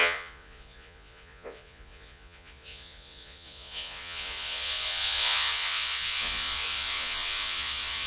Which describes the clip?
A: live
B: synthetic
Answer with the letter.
B